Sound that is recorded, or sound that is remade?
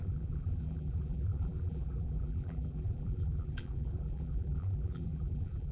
remade